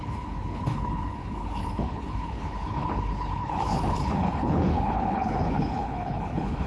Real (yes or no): no